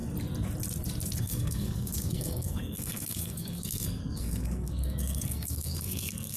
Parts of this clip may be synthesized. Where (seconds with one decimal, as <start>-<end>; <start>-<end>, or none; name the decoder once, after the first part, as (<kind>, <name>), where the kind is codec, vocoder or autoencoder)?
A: 1.2-6.4 (codec, SNAC)